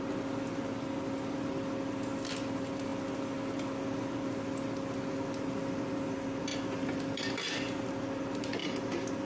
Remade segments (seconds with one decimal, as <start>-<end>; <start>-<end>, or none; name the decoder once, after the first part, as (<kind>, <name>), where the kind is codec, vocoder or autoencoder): 6.5-7.9 (vocoder, BigVGAN v2)